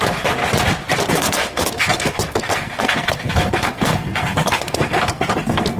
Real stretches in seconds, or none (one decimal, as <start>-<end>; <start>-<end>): 0.4-1.1